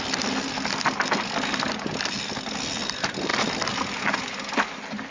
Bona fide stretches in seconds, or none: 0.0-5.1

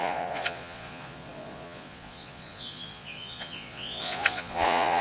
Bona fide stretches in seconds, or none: none

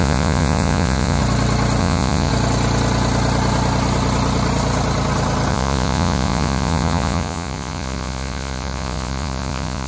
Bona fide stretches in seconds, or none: 1.2-1.8; 2.3-5.5

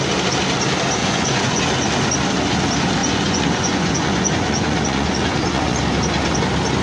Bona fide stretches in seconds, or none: 0.0-1.0; 1.6-3.0; 5.8-6.8

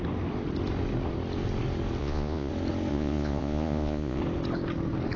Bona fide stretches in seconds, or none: 0.0-2.0; 2.5-2.9; 4.2-5.2

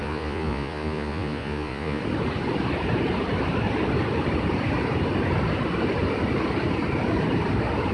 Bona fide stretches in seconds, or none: 2.0-7.9

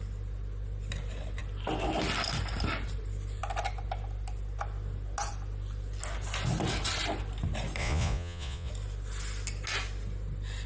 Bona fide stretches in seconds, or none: 0.0-7.8; 8.7-10.7